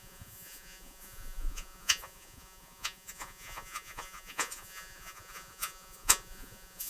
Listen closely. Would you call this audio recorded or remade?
remade